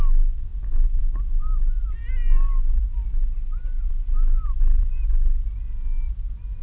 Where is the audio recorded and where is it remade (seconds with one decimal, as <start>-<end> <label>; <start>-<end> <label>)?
0.0-6.6 recorded